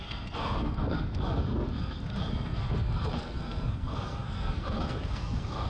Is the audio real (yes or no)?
no